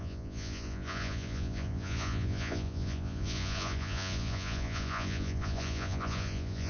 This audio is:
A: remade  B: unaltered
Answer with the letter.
A